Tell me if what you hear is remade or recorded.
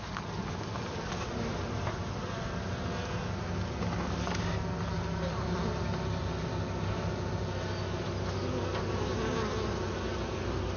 recorded